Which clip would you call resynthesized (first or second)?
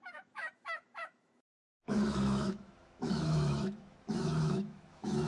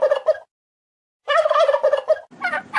first